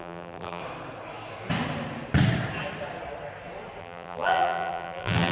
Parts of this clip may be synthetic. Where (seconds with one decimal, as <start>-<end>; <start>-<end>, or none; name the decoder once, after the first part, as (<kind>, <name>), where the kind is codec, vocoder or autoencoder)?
0.0-0.6 (vocoder, BigVGAN v2); 3.8-5.3